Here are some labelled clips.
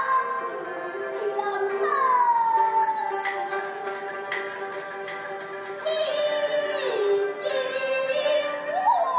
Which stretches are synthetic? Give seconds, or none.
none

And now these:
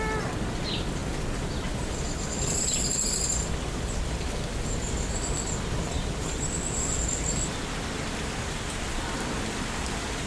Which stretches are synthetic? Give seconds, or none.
none

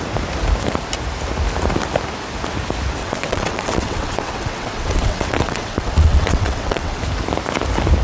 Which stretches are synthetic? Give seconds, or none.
3.0-7.0 (vocoder, WaveNeXt)